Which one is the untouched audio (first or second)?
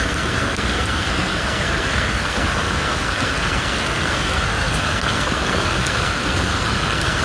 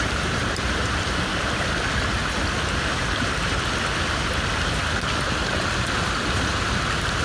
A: second